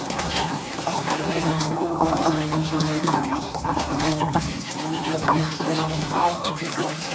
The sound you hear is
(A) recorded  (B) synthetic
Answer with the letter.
B